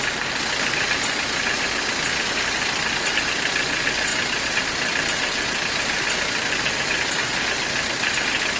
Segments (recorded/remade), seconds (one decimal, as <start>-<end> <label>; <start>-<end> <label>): 0.0-8.6 recorded